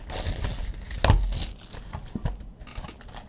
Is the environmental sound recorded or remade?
recorded